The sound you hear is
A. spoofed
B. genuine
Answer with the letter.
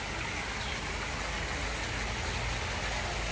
B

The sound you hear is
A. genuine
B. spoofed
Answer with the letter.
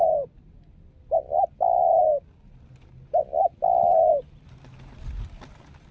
A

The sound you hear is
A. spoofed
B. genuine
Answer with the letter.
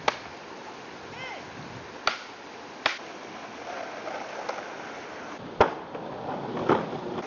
B